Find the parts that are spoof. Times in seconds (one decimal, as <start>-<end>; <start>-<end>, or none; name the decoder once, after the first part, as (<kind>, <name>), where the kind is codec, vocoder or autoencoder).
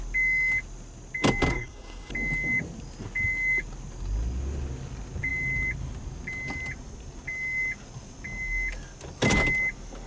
1.5-2.1 (codec, SNAC)